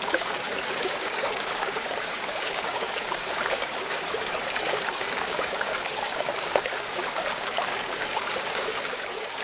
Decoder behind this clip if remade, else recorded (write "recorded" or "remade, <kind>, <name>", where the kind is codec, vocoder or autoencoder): remade, codec, DAC